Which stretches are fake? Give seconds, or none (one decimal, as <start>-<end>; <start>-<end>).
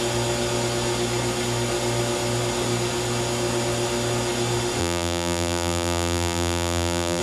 4.8-7.2